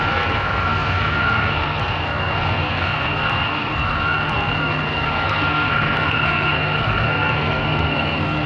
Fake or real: fake